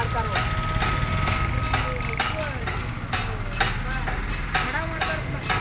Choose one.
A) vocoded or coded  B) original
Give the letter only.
B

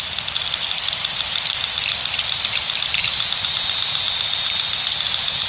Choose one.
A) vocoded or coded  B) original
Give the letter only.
B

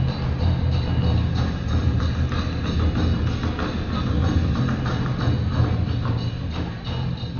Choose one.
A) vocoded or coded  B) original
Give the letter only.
B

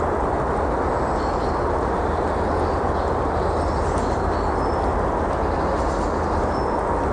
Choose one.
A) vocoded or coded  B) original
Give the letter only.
B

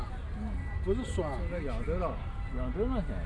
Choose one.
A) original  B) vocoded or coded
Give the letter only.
A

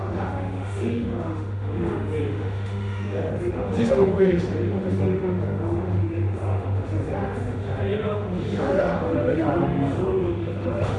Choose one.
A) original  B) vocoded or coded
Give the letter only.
B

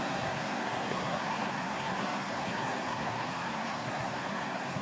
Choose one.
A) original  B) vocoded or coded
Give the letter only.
B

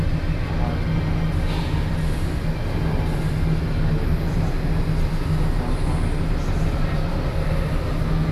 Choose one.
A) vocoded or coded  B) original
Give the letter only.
B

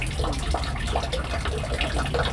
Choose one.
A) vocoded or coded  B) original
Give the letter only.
B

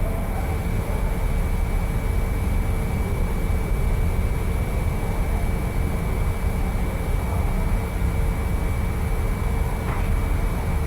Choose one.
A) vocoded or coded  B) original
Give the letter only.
B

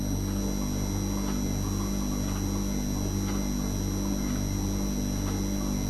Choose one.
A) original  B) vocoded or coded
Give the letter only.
A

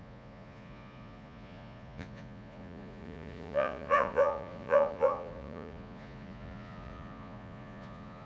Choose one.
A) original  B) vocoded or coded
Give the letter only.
B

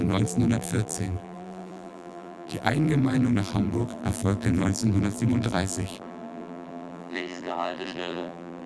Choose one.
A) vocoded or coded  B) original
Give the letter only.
A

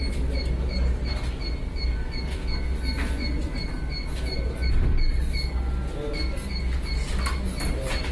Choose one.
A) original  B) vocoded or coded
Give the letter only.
A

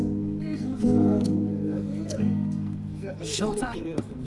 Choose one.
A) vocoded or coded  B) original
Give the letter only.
A